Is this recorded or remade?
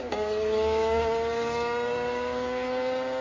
remade